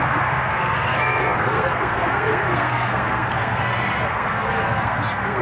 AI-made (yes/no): yes